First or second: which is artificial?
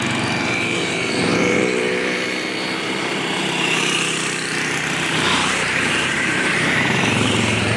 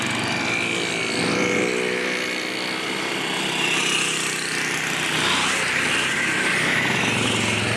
first